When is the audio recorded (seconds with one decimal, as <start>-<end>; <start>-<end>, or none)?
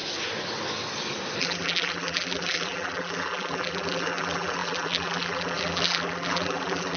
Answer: 0.0-1.4